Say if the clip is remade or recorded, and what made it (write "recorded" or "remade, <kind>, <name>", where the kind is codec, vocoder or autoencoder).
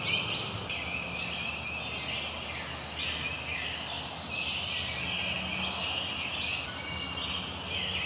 recorded